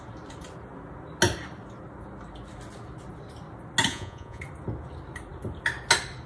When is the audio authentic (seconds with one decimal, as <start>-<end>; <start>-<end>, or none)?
0.0-3.9; 4.4-6.3